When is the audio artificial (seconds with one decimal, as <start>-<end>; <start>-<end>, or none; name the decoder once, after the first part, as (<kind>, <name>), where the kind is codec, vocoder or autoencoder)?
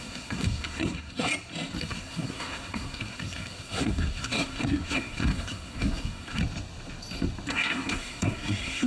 0.0-1.3 (codec, SNAC); 1.8-6.4; 7.5-8.9